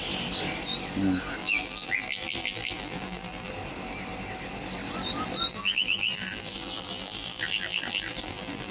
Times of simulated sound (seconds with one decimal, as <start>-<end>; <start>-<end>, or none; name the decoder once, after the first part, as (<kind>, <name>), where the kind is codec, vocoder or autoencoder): 1.4-3.5 (vocoder, BigVGAN v2); 5.5-8.7